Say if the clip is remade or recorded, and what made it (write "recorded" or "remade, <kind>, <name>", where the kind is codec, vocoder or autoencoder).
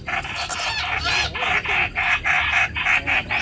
recorded